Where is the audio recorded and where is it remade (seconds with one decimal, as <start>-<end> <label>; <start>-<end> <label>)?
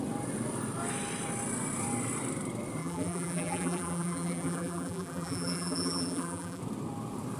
0.0-2.8 recorded; 2.8-6.6 remade; 6.6-7.4 recorded